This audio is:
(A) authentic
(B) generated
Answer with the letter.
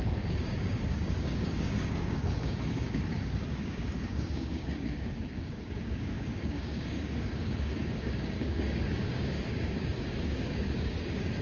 B